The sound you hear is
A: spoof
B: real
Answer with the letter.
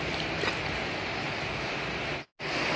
B